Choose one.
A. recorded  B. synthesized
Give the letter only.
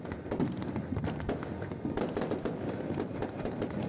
A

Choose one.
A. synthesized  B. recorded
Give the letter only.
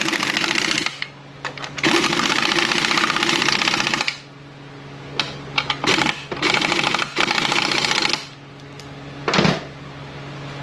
B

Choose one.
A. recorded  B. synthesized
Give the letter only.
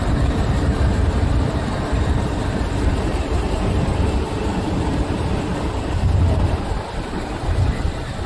B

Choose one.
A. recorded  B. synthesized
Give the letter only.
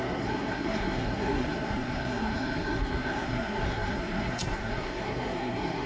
B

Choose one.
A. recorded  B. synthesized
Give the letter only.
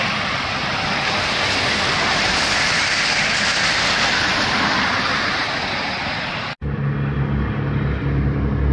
A